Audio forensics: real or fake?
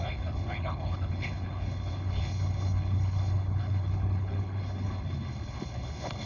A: fake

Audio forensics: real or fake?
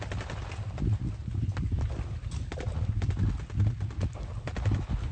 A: real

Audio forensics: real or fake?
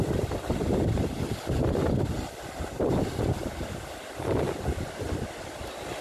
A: real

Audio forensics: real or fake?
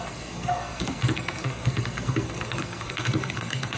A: fake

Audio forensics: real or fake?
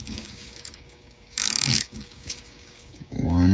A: fake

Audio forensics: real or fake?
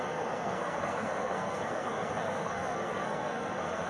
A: fake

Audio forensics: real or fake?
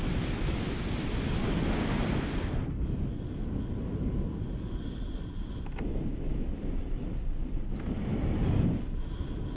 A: real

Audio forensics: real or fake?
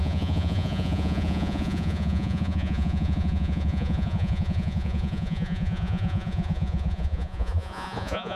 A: fake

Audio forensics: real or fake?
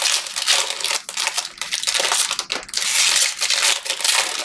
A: real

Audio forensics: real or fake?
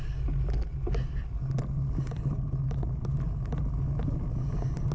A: real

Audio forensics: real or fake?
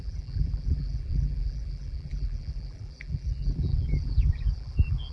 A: fake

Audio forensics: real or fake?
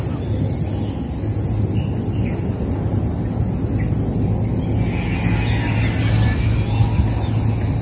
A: real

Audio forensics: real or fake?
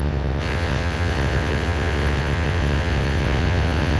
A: fake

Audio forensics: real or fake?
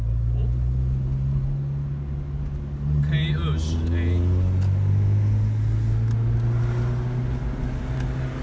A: real